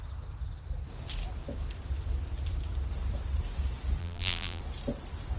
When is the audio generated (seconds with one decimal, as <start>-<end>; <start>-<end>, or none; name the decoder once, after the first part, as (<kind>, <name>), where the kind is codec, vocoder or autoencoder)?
4.0-4.6 (vocoder, BigVGAN v2)